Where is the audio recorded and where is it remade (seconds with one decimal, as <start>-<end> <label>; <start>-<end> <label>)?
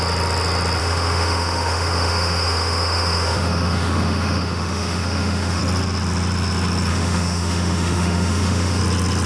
0.0-0.8 recorded; 0.8-5.6 remade; 5.6-6.9 recorded; 6.9-8.8 remade; 8.8-9.3 recorded